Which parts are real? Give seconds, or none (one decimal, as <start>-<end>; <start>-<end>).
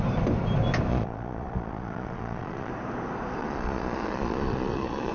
0.0-0.9; 2.7-3.4